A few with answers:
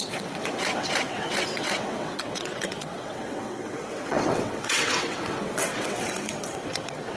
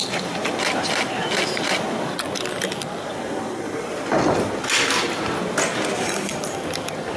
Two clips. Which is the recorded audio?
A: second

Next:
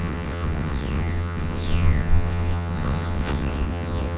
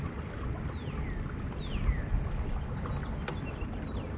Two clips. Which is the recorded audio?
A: second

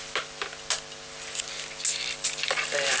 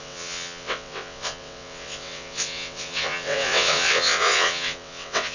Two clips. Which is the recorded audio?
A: first